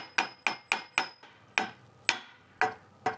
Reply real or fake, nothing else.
real